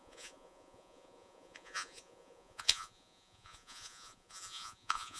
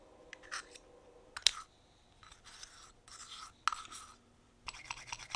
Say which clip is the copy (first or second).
first